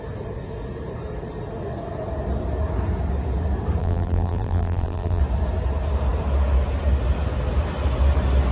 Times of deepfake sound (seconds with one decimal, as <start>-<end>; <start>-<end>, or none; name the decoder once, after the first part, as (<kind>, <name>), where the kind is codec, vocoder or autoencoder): 3.8-5.2 (vocoder, BigVGAN v2)